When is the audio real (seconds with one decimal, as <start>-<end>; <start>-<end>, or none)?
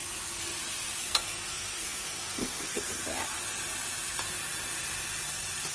0.0-1.0; 3.0-5.7